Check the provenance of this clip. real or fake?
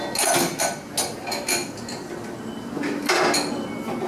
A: real